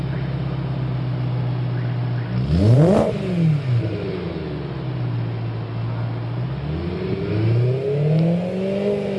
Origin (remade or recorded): recorded